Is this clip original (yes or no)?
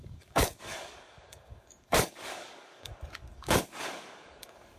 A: no